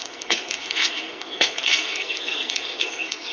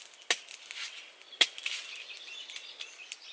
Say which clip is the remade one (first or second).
first